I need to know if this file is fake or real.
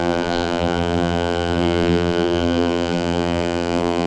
fake